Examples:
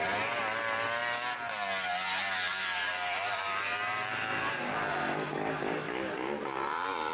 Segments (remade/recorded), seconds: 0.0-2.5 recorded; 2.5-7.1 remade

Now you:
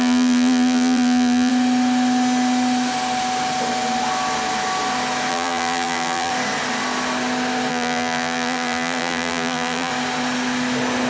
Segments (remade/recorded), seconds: 0.0-1.5 remade; 1.5-5.3 recorded; 5.3-6.3 remade; 6.3-7.7 recorded; 7.7-9.9 remade; 9.9-11.1 recorded

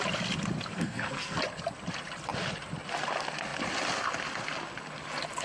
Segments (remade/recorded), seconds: 0.0-0.7 recorded; 0.7-1.4 remade; 1.4-5.4 recorded